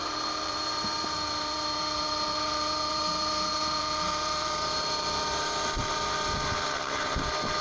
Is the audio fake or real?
fake